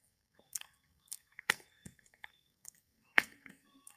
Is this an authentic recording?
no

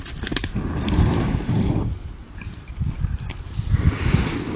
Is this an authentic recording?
yes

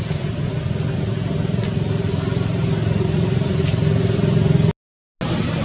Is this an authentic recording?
yes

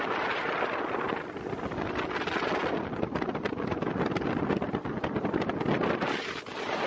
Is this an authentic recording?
yes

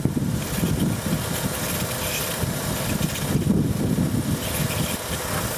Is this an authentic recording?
yes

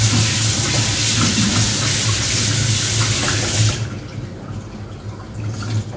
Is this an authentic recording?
yes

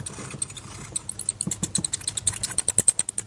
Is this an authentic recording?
yes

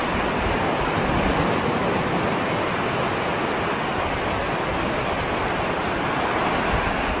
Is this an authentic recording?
yes